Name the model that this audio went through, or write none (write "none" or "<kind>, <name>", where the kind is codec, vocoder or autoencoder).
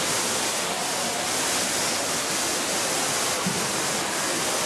none